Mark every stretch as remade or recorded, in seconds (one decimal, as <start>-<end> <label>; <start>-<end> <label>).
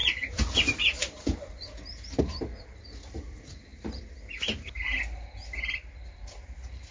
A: 0.0-6.9 recorded